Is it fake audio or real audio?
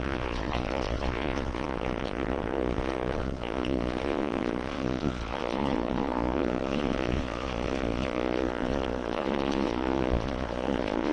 fake